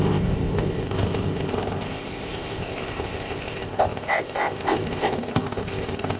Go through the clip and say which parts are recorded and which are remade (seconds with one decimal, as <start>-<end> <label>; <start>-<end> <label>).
0.0-6.2 remade